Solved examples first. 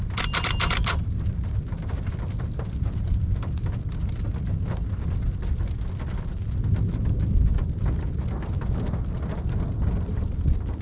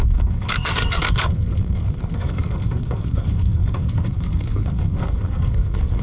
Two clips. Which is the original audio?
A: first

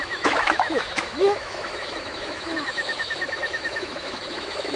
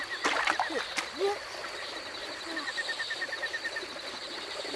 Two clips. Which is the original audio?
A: second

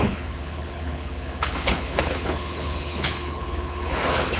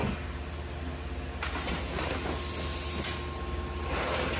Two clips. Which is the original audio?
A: second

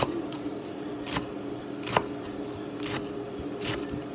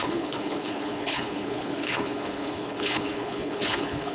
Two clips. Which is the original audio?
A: first